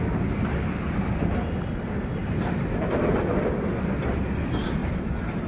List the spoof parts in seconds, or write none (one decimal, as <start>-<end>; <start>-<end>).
2.2-3.2; 4.8-5.5